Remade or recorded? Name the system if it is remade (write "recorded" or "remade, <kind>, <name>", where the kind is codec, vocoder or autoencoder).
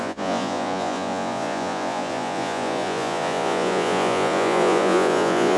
remade, vocoder, Vocos